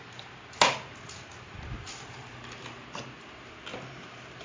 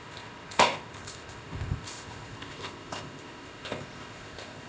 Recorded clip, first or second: first